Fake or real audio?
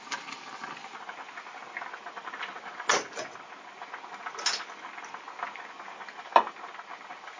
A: real